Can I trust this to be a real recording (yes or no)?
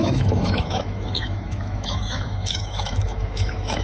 no